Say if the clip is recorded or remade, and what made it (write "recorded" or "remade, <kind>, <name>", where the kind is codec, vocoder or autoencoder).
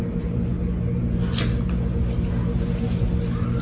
recorded